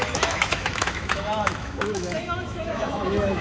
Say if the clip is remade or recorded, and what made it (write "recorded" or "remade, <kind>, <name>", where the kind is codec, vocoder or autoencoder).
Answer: remade, autoencoder, DAC-VAE